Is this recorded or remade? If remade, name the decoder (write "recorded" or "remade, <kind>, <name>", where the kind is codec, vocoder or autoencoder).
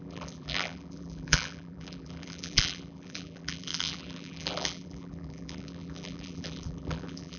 remade, vocoder, BigVGAN v2